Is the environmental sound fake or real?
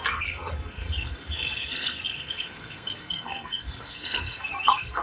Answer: fake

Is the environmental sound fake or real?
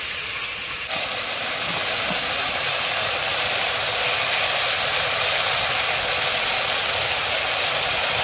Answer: real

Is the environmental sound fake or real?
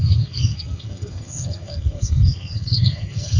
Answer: fake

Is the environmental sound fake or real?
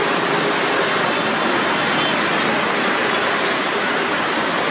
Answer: real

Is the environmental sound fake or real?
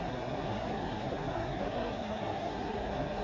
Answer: fake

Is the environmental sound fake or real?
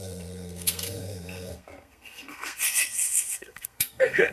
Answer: fake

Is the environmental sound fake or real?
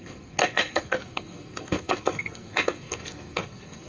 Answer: fake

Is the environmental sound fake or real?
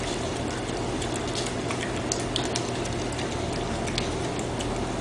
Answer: real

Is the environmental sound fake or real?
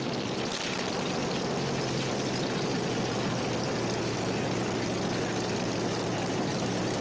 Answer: real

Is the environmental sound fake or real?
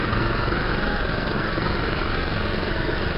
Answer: fake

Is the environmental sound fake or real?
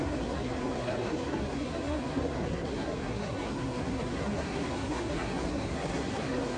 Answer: fake